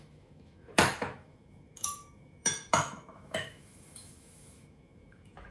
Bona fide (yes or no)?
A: no